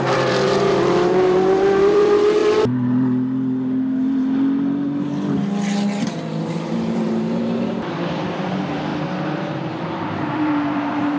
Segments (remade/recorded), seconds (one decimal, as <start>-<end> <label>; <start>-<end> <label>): 0.0-2.4 remade; 2.4-6.7 recorded; 6.7-11.2 remade